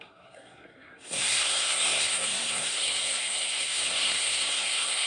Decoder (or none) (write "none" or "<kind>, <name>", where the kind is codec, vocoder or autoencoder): codec, SNAC